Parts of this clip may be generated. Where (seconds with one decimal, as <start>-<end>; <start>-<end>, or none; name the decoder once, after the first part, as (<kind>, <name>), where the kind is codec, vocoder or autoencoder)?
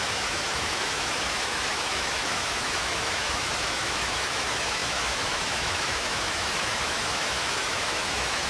0.0-8.5 (autoencoder, DAC-VAE)